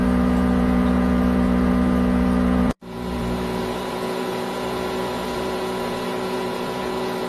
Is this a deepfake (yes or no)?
yes